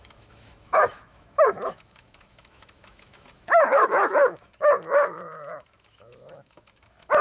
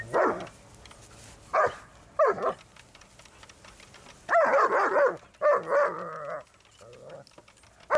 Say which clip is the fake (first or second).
first